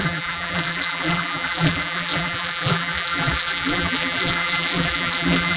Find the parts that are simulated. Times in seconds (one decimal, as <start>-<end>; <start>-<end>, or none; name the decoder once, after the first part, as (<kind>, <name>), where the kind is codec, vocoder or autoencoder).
0.0-5.6 (vocoder, BigVGAN v2)